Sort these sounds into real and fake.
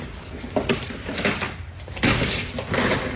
real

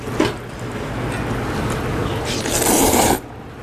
real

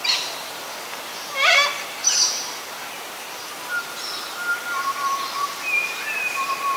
fake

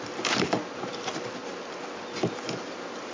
real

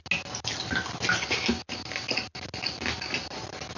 real